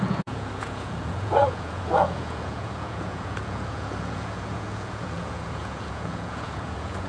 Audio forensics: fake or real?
fake